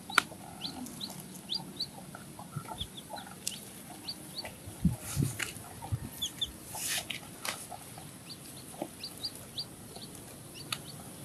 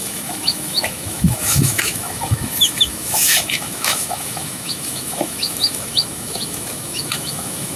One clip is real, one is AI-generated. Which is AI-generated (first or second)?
second